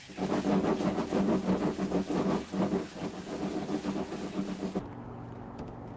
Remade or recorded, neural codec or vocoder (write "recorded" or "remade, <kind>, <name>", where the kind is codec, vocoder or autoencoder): recorded